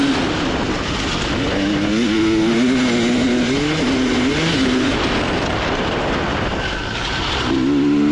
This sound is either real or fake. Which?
real